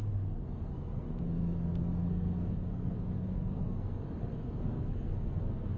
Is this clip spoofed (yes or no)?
yes